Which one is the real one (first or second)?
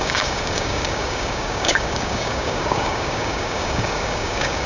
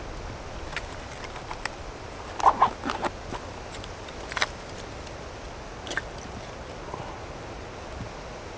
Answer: second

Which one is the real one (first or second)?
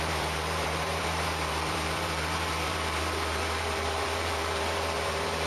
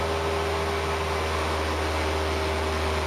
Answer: second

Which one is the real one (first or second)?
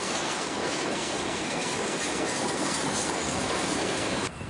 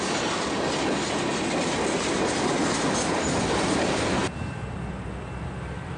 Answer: second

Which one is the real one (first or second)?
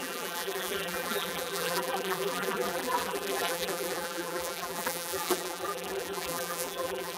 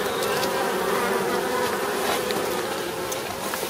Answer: second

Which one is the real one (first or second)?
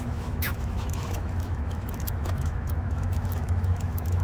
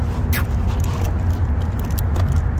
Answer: second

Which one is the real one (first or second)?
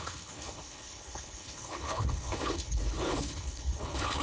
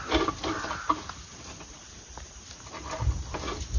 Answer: second